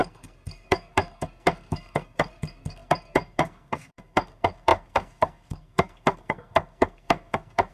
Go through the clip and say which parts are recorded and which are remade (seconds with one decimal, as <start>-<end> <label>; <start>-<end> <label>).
0.0-7.7 remade